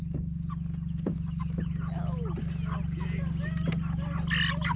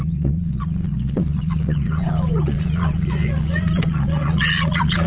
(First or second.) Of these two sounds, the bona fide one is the first